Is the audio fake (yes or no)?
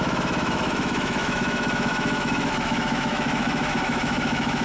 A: yes